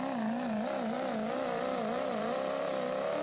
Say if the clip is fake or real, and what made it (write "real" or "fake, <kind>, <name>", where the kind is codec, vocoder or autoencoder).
real